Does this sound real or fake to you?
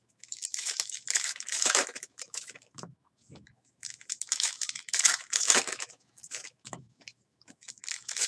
fake